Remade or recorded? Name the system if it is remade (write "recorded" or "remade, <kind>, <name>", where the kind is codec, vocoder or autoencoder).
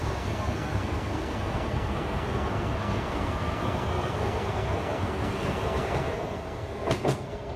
remade, codec, SNAC